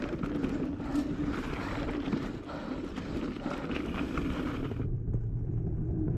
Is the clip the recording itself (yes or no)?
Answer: no